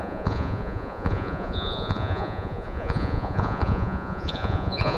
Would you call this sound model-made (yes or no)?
yes